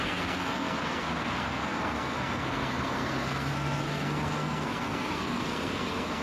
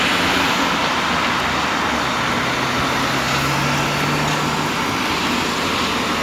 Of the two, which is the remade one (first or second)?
first